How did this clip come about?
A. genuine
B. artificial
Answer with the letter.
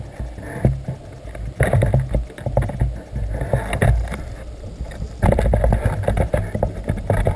A